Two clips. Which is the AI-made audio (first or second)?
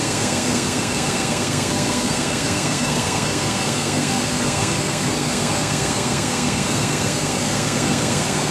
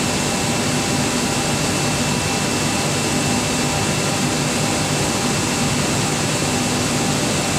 first